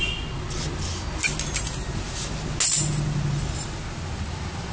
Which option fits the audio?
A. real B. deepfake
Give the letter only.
A